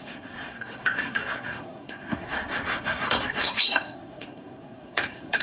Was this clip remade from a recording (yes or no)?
yes